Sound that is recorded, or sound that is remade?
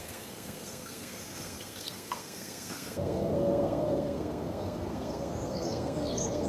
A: remade